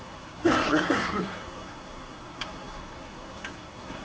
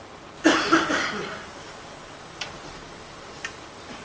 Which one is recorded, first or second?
second